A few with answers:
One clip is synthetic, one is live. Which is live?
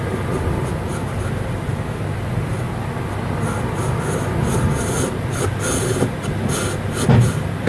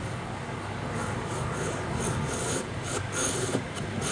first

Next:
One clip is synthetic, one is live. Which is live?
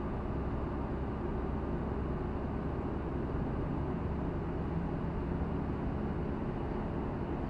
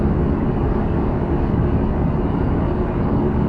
first